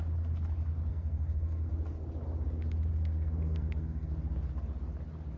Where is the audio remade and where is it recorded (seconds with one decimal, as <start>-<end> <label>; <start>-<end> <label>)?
0.0-0.9 recorded; 0.9-1.7 remade; 1.7-2.9 recorded; 2.9-4.1 remade; 4.1-5.4 recorded